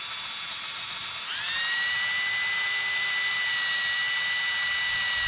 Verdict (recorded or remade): recorded